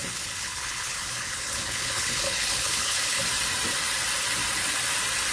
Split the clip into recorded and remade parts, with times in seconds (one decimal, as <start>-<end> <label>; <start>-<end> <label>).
0.0-3.2 remade; 3.2-5.3 recorded